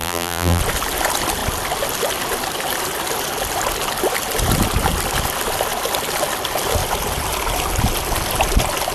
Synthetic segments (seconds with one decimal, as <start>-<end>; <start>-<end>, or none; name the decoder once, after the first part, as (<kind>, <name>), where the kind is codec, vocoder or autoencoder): 0.0-0.6 (vocoder, BigVGAN v2)